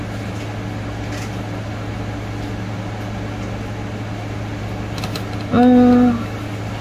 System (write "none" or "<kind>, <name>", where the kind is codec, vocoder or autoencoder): none